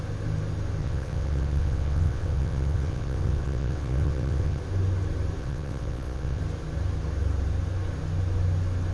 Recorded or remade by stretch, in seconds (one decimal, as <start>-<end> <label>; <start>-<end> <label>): 0.0-0.8 recorded; 0.8-4.6 remade; 4.6-5.4 recorded; 5.4-6.4 remade; 6.4-8.9 recorded